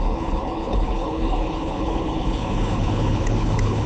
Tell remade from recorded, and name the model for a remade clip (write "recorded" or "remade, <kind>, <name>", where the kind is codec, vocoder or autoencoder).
remade, codec, HILCodec